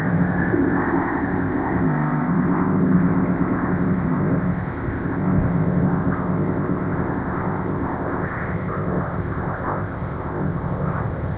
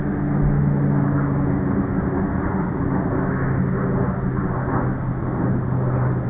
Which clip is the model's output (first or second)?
first